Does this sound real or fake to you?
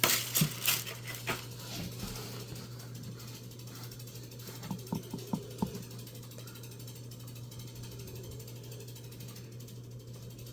real